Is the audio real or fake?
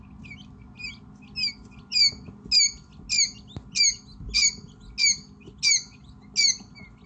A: real